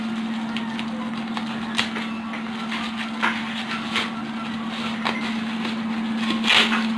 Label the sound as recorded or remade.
recorded